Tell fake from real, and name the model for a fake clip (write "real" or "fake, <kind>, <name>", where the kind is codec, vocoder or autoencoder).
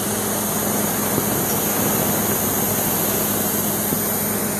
real